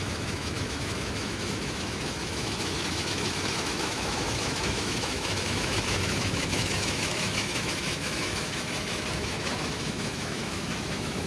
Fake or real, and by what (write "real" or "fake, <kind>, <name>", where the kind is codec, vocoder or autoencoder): fake, autoencoder, DAC-VAE